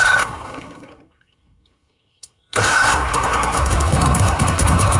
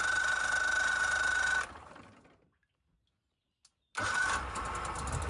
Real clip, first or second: second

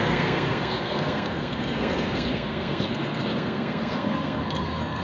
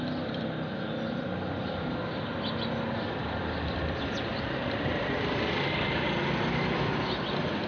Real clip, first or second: second